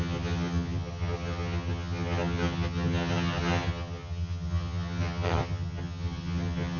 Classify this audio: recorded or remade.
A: remade